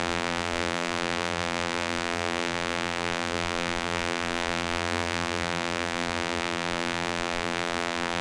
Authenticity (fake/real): fake